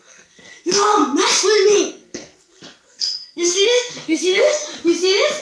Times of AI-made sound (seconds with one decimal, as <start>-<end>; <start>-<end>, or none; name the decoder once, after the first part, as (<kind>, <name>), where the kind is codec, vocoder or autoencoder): 0.0-1.0 (codec, SNAC); 1.9-4.6